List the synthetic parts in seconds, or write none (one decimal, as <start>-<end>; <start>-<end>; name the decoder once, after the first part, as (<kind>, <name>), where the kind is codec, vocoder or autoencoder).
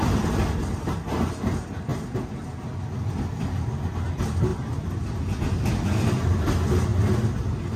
none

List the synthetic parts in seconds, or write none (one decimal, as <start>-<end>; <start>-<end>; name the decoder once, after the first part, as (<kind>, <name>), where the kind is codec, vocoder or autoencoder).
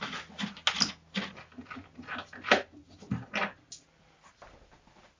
none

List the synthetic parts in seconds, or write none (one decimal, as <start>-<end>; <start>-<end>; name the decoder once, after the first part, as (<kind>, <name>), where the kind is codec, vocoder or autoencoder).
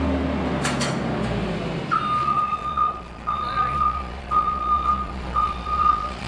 2.2-6.3 (vocoder, Vocos)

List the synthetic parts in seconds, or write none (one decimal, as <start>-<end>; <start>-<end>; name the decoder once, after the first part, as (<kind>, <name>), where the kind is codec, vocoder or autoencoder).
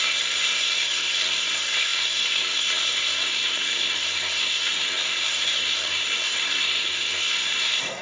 0.0-8.0 (codec, SNAC)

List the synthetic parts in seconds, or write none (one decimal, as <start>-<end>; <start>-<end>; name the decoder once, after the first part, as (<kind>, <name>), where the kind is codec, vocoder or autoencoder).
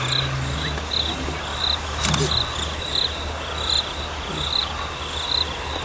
none